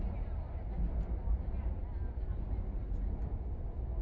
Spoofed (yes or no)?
no